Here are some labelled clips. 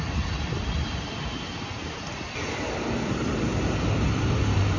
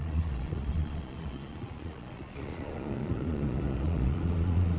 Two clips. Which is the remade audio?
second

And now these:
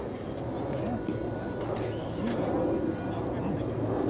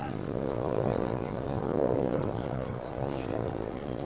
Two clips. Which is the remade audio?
second